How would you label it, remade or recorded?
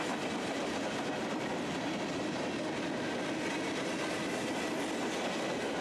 recorded